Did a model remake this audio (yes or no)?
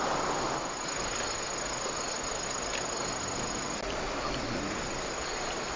no